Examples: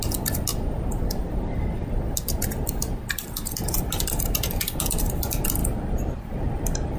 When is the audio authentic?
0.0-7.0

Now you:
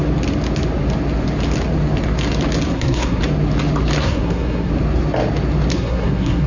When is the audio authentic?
0.0-2.7; 3.2-4.0; 4.7-5.7

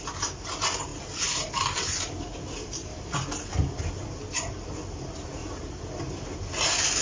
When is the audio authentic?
0.0-7.0

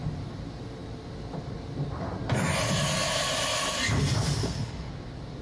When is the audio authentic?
0.0-4.4; 4.9-5.4

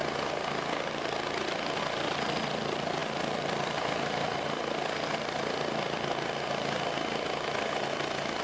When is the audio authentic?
0.0-8.4

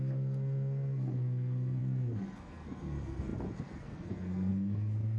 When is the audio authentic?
none